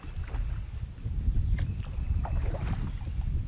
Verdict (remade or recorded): recorded